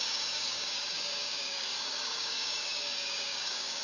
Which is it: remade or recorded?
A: remade